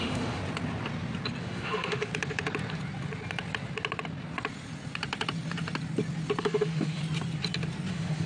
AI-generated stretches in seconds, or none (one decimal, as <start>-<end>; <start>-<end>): 0.0-0.4; 1.4-2.1; 6.4-7.0; 7.9-8.3